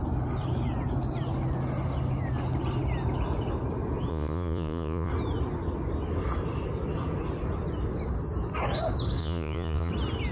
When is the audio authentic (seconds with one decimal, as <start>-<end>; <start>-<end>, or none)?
0.0-4.1; 5.1-9.2; 9.9-10.3